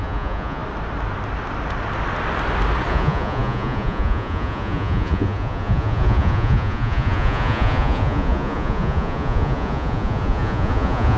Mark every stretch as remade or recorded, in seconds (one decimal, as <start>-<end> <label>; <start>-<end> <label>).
0.0-0.6 remade; 0.6-2.9 recorded; 2.9-11.2 remade

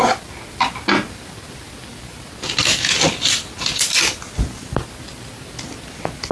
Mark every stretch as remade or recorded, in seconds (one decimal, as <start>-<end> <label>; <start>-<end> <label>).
0.0-6.3 recorded

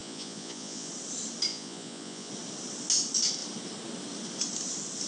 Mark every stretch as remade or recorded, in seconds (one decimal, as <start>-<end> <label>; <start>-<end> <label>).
0.0-0.9 remade; 0.9-1.5 recorded; 1.5-2.3 remade; 2.3-5.1 recorded

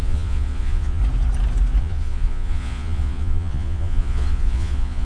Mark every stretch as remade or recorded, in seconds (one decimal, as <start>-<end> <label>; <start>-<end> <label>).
0.0-1.0 remade; 1.0-1.8 recorded; 1.8-5.0 remade

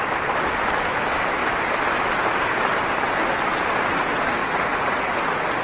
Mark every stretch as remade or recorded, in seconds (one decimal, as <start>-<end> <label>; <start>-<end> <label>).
0.0-4.4 recorded; 4.4-5.6 remade

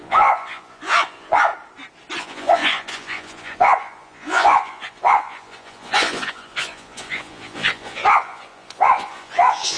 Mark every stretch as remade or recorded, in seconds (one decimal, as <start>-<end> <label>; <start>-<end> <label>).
0.0-1.5 remade; 1.5-2.2 recorded; 2.2-9.8 remade